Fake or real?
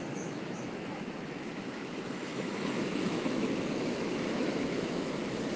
fake